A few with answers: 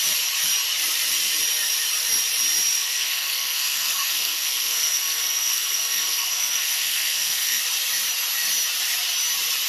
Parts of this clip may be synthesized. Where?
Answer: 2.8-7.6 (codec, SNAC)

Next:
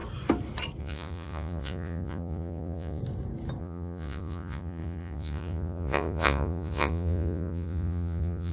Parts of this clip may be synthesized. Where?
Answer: 0.8-3.0 (vocoder, Vocos); 3.6-8.5

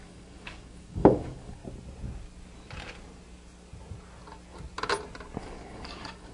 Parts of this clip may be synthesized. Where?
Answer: 0.0-1.6 (codec, DAC); 5.4-6.3

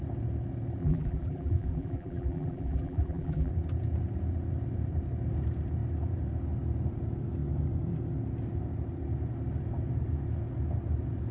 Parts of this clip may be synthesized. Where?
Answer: 0.8-3.5 (vocoder, BigVGAN v2)

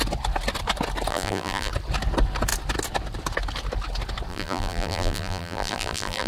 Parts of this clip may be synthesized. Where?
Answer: 1.1-1.7 (vocoder, BigVGAN v2); 4.3-6.3

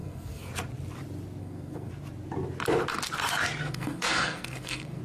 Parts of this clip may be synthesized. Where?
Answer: 0.0-0.5 (codec, SNAC); 1.4-1.9; 3.6-5.0

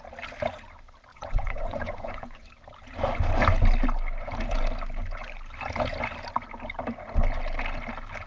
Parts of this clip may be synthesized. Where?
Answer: 1.1-2.5 (vocoder, Vocos)

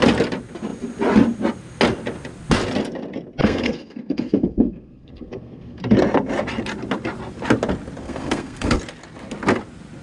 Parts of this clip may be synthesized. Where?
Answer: 3.4-5.8 (codec, SNAC); 8.0-8.8